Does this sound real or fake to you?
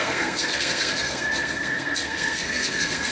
fake